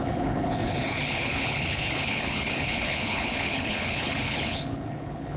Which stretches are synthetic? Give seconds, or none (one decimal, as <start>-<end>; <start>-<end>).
0.0-5.4